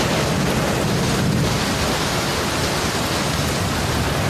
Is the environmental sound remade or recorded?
recorded